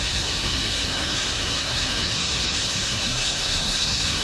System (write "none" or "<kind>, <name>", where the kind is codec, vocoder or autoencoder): codec, SNAC